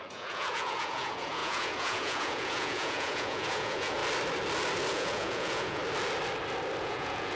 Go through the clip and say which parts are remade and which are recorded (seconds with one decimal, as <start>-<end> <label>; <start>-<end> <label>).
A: 0.0-4.0 remade; 4.0-4.9 recorded; 4.9-5.8 remade; 5.8-6.8 recorded; 6.8-7.4 remade